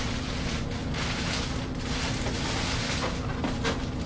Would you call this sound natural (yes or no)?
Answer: yes